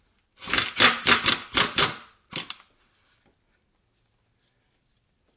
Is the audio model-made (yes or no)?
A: no